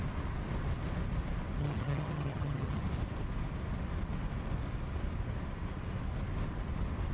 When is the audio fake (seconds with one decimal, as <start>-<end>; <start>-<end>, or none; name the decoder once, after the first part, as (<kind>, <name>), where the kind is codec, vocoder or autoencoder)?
1.6-2.8 (vocoder, HiFi-GAN)